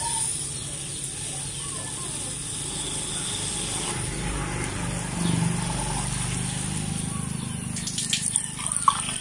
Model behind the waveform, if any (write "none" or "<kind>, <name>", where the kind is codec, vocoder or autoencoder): none